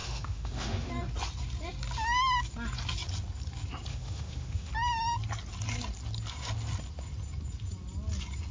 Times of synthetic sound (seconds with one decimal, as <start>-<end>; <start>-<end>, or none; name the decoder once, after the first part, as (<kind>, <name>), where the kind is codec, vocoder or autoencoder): 0.0-0.9 (autoencoder, DAC-VAE); 3.9-4.7